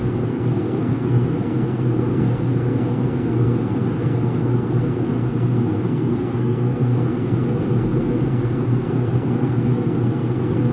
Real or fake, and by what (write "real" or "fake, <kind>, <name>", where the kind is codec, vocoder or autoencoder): fake, codec, SNAC